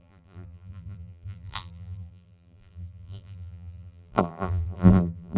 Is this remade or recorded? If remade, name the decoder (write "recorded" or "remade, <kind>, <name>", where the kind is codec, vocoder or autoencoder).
remade, vocoder, BigVGAN v2